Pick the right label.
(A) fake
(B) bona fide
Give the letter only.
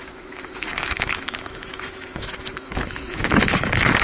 A